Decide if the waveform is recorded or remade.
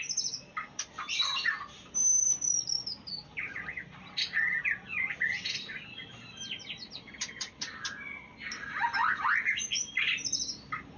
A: remade